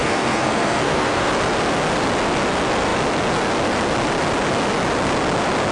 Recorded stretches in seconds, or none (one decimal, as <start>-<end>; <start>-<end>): 1.3-5.7